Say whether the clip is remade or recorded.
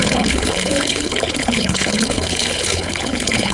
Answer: remade